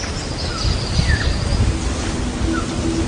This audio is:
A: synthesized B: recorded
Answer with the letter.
B